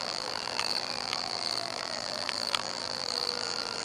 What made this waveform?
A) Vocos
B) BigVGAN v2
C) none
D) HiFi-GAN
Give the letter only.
B